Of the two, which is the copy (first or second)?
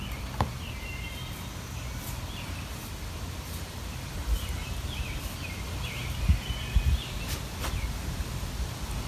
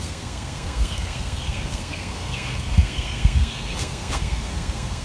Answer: second